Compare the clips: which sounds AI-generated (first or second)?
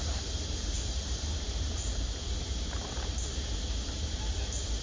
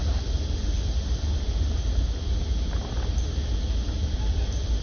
first